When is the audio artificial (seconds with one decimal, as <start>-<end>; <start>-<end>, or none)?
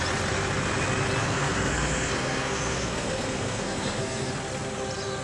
1.2-4.3